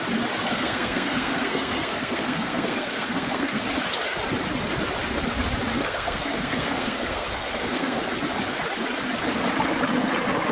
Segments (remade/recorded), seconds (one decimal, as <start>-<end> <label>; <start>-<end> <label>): 0.0-0.5 recorded; 0.5-3.6 remade; 3.6-5.7 recorded; 5.7-8.0 remade; 8.0-10.5 recorded